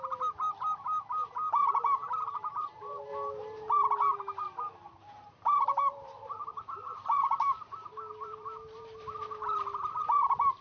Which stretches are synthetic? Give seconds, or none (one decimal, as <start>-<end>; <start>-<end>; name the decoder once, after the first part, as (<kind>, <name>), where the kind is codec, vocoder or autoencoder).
0.0-3.1 (vocoder, BigVGAN v2); 3.7-10.6